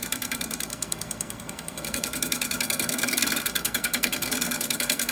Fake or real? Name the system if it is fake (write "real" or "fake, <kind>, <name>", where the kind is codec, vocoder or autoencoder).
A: fake, codec, SNAC